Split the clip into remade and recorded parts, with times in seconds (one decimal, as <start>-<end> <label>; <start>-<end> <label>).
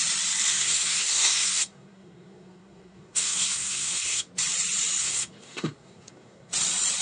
0.0-0.5 recorded; 0.5-4.3 remade; 4.3-5.0 recorded; 5.0-6.5 remade; 6.5-7.0 recorded